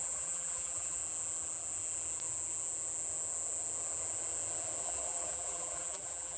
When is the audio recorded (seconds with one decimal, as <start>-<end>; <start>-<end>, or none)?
1.0-4.8